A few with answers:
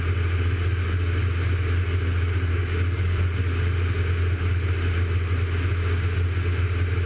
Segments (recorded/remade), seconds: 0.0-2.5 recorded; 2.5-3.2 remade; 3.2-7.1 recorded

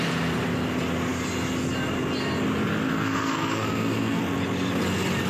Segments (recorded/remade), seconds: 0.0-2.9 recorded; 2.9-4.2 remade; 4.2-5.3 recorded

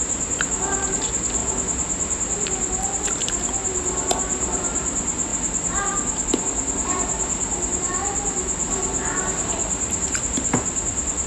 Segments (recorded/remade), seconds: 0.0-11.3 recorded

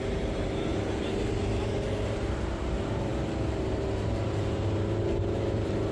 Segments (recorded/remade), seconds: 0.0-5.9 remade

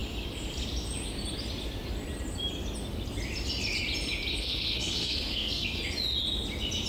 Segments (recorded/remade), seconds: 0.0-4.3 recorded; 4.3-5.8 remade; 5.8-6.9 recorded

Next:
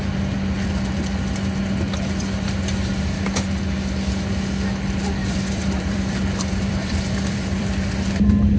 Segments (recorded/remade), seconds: 0.0-5.2 recorded; 5.2-7.9 remade; 7.9-8.6 recorded

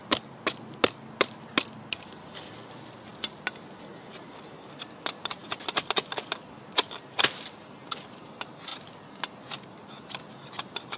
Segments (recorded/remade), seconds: 0.0-11.0 recorded

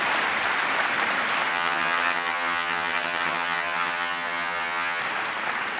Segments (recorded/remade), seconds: 0.0-1.5 recorded; 1.5-5.0 remade; 5.0-5.8 recorded